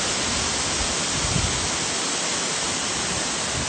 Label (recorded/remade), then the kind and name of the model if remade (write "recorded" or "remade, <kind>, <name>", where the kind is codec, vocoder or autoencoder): recorded